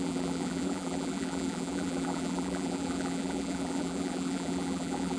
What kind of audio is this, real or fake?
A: fake